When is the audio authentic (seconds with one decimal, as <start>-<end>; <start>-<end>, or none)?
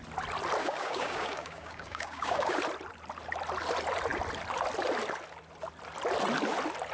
0.0-0.6; 2.6-6.9